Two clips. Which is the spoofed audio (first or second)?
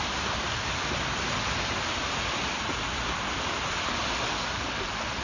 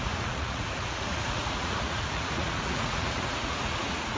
second